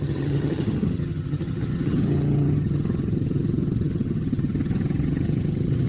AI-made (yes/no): yes